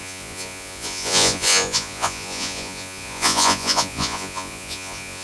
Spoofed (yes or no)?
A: yes